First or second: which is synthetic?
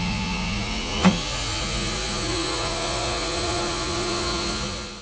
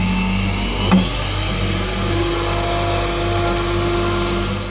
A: first